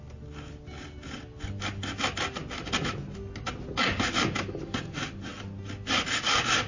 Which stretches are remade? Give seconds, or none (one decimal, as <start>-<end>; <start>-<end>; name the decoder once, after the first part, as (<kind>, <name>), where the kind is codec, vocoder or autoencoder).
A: none